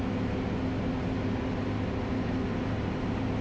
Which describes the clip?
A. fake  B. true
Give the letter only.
B